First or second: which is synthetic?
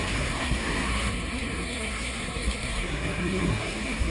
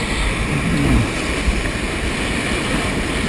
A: first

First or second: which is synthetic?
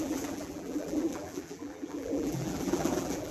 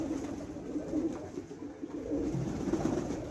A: first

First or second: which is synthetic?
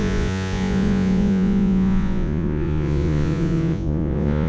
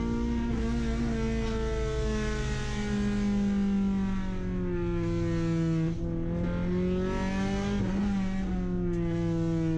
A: first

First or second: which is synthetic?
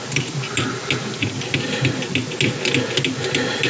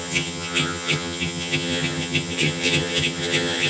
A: second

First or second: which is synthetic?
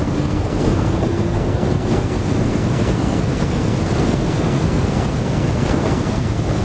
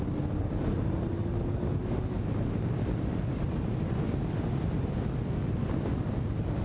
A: first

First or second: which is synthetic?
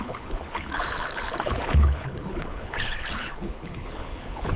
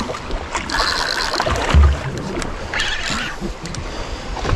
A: first